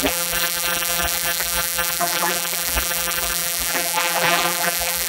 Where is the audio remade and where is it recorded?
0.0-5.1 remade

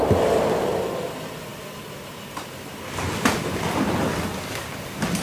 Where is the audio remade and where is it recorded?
0.0-5.2 recorded

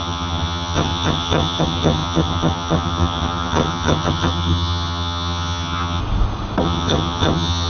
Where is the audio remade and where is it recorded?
0.0-6.0 remade; 6.0-6.6 recorded; 6.6-7.7 remade

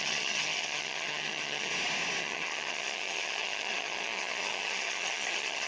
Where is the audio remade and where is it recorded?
0.0-1.7 remade; 1.7-2.2 recorded; 2.2-5.7 remade

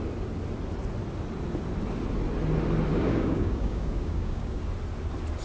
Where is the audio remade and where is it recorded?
0.0-2.9 recorded; 2.9-4.6 remade; 4.6-5.4 recorded

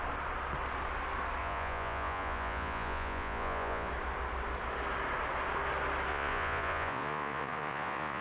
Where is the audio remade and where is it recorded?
0.0-1.4 recorded; 1.4-3.9 remade; 3.9-6.1 recorded; 6.1-8.2 remade

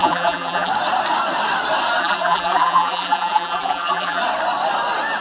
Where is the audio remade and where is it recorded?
0.0-0.7 remade; 0.7-2.0 recorded; 2.0-4.2 remade; 4.2-5.2 recorded